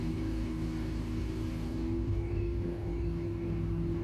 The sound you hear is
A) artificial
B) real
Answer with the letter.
A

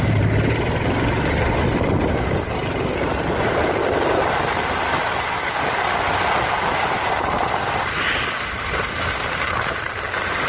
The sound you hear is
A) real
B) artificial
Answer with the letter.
A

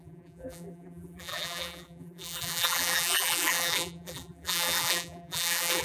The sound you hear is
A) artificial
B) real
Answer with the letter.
A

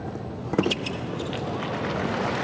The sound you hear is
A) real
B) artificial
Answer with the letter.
A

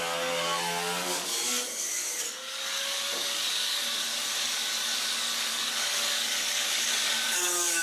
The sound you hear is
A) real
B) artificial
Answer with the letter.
B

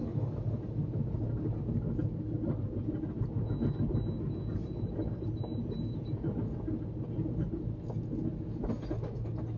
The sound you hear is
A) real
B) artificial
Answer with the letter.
A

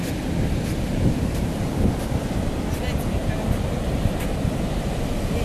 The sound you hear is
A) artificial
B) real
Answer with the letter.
B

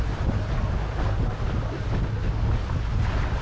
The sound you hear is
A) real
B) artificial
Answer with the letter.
A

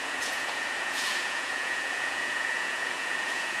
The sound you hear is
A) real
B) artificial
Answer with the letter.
B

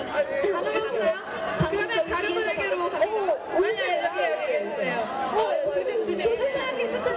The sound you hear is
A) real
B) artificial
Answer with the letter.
A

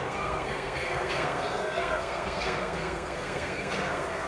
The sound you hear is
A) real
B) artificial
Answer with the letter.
B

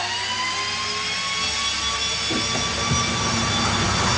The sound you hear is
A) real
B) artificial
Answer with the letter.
A